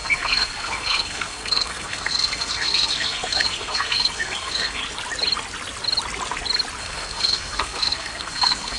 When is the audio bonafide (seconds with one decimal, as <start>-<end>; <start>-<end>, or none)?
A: 4.8-6.8